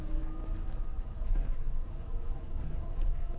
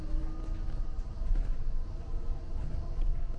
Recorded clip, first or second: second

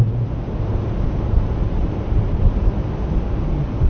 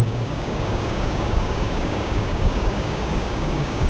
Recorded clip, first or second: first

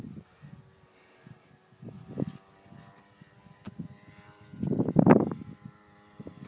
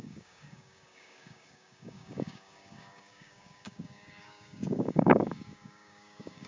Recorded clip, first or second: first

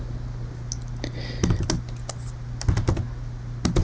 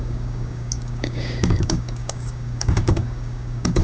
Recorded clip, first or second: first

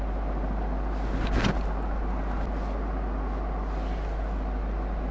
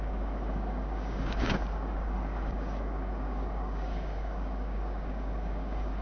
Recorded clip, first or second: first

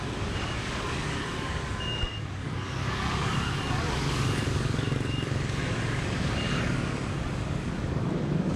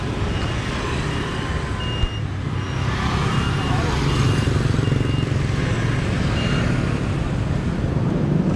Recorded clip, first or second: second